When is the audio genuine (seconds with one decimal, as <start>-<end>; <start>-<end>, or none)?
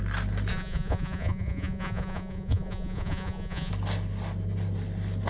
0.0-0.5; 3.7-5.3